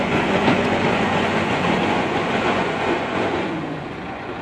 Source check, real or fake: fake